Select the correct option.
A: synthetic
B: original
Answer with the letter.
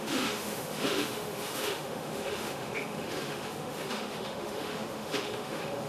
A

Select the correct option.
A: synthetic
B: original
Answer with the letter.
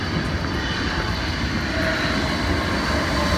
B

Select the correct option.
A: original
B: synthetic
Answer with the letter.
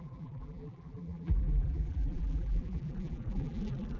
B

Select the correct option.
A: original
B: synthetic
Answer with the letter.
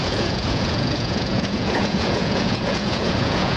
B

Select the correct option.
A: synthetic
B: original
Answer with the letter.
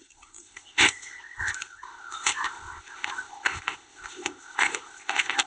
A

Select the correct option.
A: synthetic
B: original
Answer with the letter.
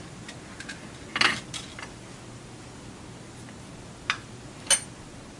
B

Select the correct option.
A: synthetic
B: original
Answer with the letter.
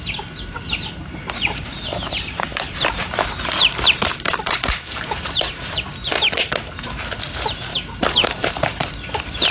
A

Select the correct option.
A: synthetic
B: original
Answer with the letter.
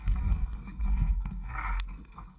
A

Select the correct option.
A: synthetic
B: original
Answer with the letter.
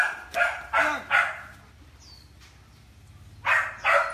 B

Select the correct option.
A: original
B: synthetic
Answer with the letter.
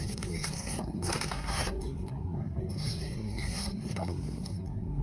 B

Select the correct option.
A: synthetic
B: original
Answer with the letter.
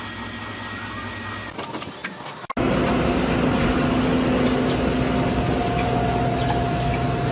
B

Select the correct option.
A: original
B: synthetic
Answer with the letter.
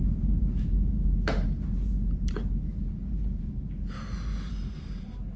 B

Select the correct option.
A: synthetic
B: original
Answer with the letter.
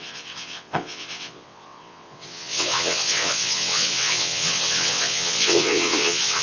A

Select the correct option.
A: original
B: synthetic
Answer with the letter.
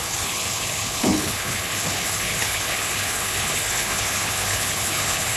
B